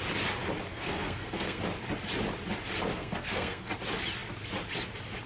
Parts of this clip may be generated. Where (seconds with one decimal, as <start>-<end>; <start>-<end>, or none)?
0.7-1.6; 2.9-3.7